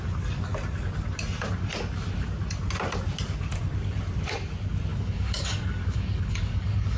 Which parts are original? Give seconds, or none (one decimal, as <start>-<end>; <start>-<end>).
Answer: 0.0-4.9